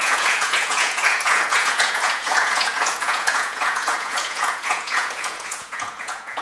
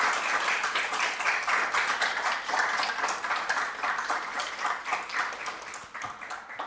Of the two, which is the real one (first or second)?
second